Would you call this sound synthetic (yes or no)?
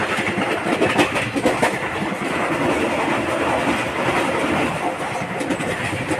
no